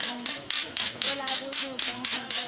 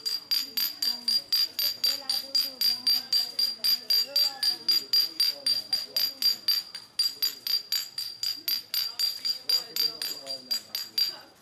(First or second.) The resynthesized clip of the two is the first